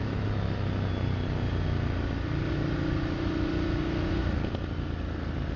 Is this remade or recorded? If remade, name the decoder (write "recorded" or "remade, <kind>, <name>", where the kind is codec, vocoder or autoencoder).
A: recorded